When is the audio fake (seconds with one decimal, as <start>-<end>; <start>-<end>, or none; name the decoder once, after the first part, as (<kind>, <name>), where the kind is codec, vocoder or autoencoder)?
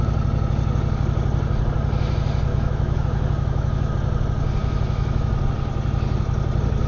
2.5-3.9 (autoencoder, DAC-VAE); 4.6-5.3